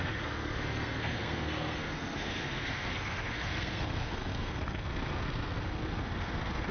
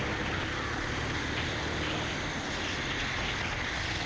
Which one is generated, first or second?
first